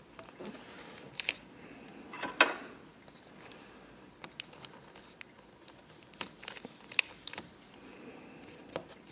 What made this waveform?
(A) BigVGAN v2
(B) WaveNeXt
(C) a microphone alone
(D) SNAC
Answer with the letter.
C